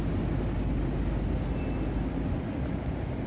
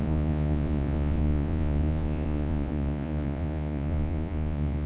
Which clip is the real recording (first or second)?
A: first